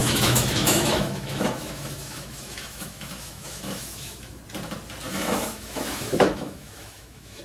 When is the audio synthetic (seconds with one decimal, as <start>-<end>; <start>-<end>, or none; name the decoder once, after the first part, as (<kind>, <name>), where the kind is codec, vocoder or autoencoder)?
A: 0.0-4.4 (autoencoder, DAC-VAE); 5.1-7.4